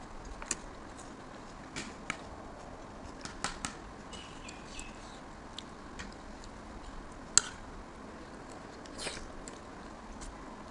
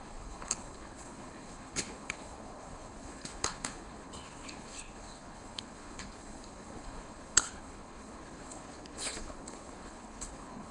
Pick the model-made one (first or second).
second